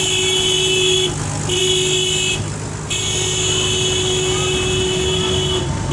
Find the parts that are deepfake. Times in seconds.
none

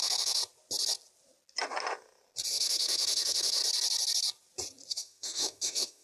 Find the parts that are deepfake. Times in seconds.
0.0-0.4; 2.5-3.6; 4.9-6.0

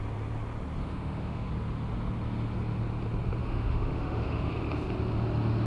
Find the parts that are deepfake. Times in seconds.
0.8-1.5; 3.4-4.5

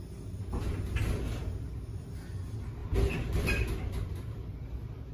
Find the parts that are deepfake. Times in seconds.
none

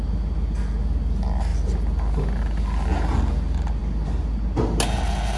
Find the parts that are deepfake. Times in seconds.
none

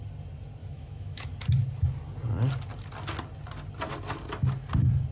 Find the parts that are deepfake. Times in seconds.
0.6-1.3